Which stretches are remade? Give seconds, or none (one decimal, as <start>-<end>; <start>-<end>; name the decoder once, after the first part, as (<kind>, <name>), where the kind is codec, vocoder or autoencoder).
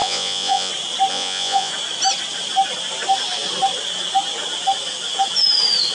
0.0-0.7 (vocoder, Vocos); 1.1-1.7